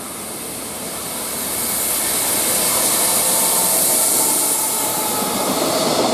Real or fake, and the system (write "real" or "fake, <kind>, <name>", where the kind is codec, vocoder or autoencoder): real